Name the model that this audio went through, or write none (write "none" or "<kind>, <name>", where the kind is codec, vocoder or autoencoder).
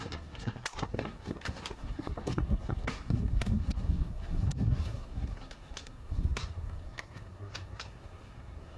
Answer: codec, SNAC